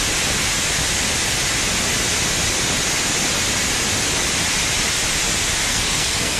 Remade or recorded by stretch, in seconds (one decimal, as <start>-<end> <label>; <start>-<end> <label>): 0.0-5.7 recorded; 5.7-6.4 remade